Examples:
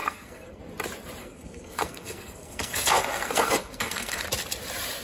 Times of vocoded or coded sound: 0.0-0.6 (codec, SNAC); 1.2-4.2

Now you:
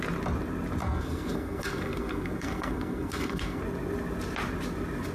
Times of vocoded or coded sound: 0.8-3.6 (codec, SNAC)

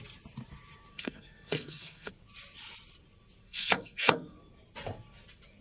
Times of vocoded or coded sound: 0.9-2.1 (codec, SNAC); 3.4-4.4

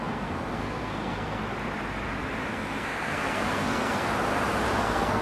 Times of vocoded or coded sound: 0.0-1.4 (codec, SNAC); 2.5-4.1; 4.8-5.2

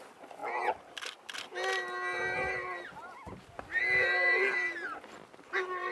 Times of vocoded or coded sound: none

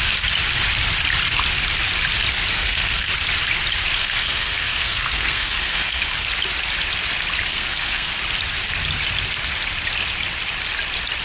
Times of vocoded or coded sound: 2.5-3.1 (codec, SNAC); 4.0-6.0; 7.5-8.1

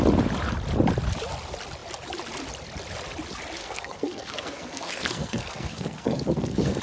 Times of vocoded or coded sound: 3.6-6.8 (codec, SNAC)

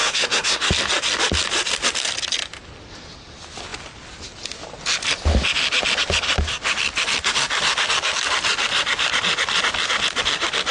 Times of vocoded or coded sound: 0.0-0.7 (codec, SNAC)